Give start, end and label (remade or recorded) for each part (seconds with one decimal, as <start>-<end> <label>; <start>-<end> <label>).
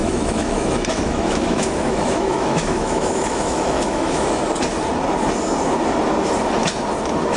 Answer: 0.0-4.4 remade; 4.4-7.4 recorded